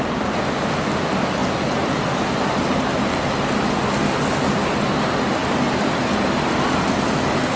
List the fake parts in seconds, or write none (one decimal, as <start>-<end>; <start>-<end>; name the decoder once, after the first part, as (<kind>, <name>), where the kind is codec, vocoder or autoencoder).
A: none